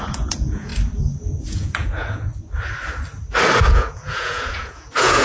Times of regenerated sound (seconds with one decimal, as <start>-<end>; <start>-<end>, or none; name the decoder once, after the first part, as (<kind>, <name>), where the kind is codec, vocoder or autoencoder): 0.0-0.7 (vocoder, Vocos); 1.5-2.3; 3.7-5.2